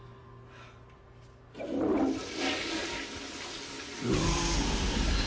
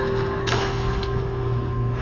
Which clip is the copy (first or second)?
second